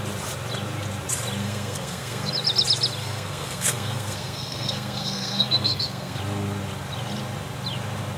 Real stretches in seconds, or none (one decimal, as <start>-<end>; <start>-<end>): 0.0-1.4; 2.3-3.0; 6.2-8.2